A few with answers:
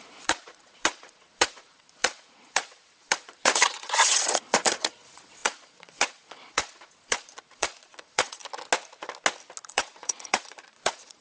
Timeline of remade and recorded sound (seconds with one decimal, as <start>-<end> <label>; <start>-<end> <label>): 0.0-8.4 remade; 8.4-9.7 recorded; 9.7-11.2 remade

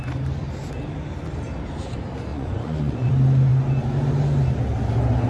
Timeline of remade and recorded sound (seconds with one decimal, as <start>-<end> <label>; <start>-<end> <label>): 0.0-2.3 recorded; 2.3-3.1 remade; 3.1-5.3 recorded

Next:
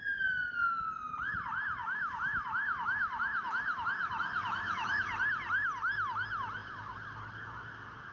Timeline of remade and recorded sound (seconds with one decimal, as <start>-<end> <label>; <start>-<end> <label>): 0.0-1.8 recorded; 1.8-5.1 remade; 5.1-8.1 recorded